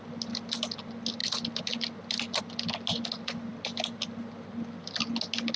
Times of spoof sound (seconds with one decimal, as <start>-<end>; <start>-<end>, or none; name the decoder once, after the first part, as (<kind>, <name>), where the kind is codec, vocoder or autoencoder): none